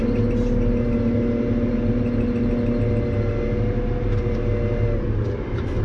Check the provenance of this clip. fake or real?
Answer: real